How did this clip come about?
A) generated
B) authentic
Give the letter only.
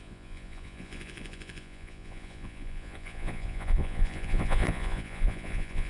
A